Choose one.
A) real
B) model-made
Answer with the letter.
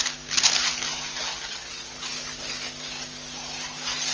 A